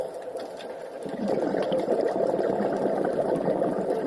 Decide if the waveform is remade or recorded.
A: recorded